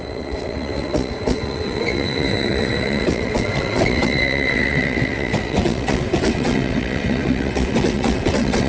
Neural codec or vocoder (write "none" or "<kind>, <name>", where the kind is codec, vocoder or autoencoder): vocoder, WaveNeXt